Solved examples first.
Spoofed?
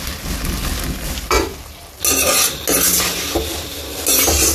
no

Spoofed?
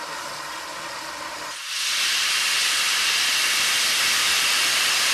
yes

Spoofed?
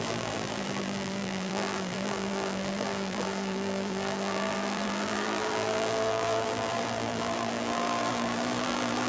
yes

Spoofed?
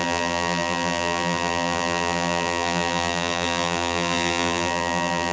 yes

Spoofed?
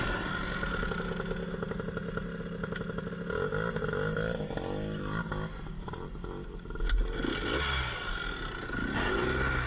no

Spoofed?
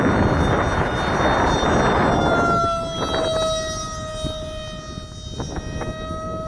no